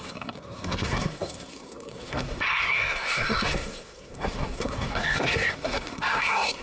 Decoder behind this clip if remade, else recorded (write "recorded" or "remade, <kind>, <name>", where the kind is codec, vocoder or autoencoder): remade, codec, SNAC